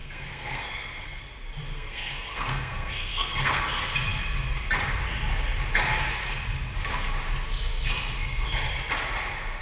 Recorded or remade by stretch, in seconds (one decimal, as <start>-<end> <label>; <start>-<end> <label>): 0.0-1.2 remade; 1.2-1.7 recorded; 1.7-3.6 remade; 3.6-9.6 recorded